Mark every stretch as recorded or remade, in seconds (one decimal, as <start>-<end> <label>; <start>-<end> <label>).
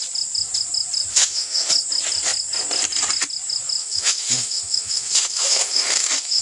0.0-1.1 recorded; 1.1-1.7 remade; 1.7-3.8 recorded; 3.8-6.4 remade